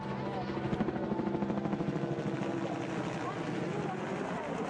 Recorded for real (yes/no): yes